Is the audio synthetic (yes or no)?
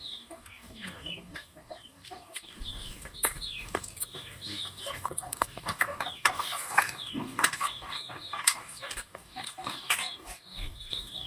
yes